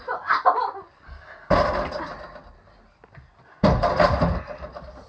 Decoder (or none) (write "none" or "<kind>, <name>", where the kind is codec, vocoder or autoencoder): none